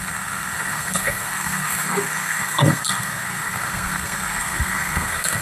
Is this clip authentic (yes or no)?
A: no